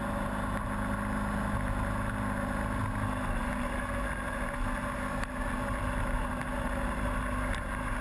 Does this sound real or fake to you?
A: real